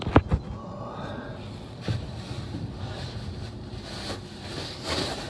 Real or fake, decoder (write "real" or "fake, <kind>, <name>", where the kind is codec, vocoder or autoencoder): real